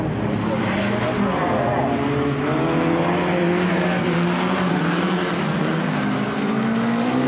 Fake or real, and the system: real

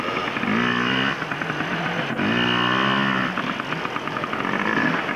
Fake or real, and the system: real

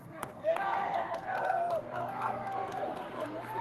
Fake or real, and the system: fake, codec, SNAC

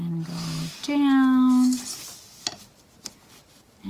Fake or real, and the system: real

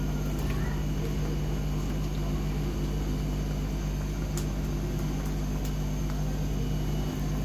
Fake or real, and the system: real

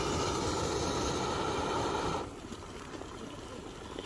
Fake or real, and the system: real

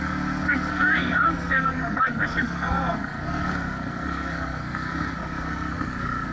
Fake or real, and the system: fake, codec, SNAC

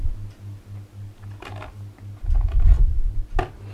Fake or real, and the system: real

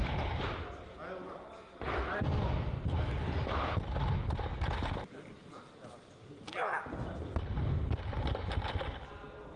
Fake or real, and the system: real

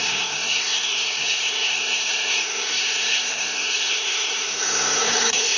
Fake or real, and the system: fake, codec, SNAC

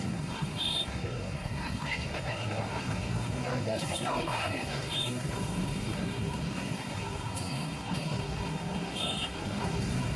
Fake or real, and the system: fake, codec, SNAC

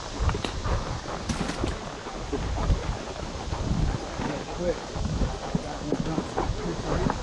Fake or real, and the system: real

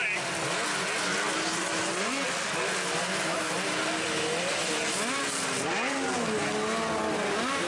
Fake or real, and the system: real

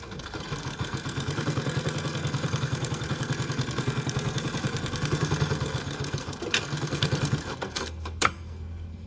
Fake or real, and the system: fake, codec, SNAC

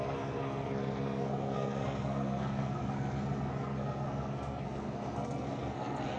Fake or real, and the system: fake, codec, SNAC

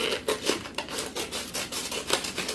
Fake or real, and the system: real